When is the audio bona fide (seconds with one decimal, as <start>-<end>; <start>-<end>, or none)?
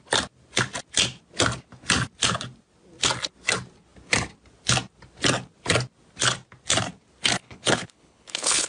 0.0-7.4